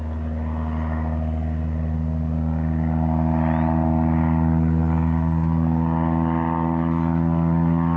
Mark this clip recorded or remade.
recorded